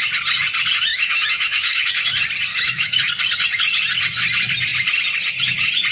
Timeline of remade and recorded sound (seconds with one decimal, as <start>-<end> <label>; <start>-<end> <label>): 0.0-0.9 recorded; 0.9-1.9 remade; 1.9-2.5 recorded; 2.5-3.1 remade; 3.1-5.9 recorded